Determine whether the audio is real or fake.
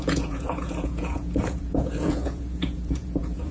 fake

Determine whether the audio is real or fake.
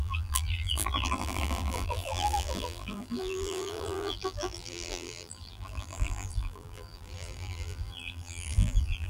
fake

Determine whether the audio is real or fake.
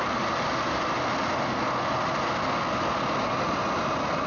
real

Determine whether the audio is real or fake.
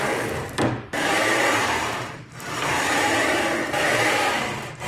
fake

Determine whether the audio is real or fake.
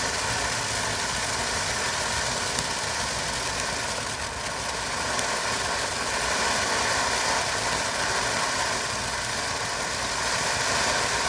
real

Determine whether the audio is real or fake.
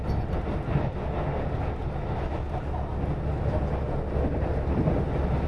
real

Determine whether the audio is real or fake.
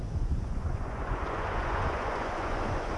fake